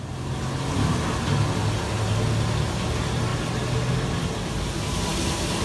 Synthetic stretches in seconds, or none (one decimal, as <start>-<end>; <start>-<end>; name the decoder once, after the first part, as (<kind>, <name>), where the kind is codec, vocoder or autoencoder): none